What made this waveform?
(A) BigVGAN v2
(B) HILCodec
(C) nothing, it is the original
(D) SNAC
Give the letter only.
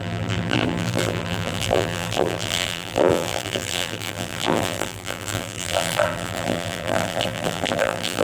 A